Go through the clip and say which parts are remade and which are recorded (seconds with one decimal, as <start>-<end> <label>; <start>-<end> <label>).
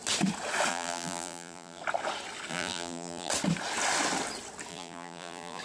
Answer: 0.0-0.7 recorded; 0.7-1.8 remade; 1.8-2.5 recorded; 2.5-3.3 remade; 3.3-4.7 recorded; 4.7-5.6 remade